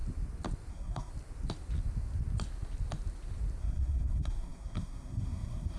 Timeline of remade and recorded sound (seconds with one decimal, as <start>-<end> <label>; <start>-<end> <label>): 0.0-0.7 recorded; 0.7-1.1 remade; 1.1-3.6 recorded; 3.6-5.8 remade